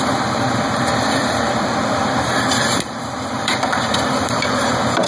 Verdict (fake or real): fake